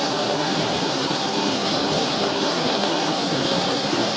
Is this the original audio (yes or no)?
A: no